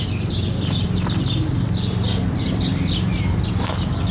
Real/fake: real